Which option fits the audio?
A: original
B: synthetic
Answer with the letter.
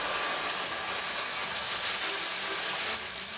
A